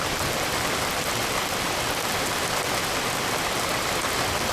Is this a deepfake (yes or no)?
no